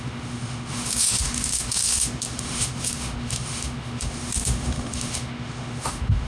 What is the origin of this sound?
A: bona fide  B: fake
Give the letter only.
B